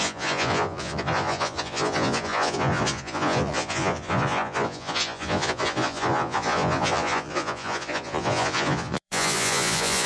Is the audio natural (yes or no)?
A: no